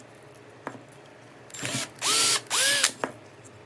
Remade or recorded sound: recorded